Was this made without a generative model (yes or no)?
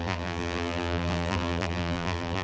no